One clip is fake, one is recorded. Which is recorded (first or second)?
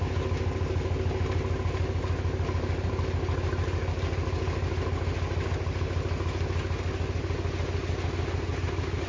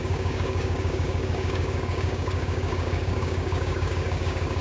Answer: first